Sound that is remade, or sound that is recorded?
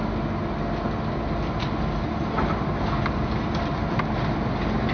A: recorded